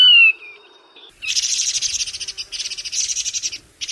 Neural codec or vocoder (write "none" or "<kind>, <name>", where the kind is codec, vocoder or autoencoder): none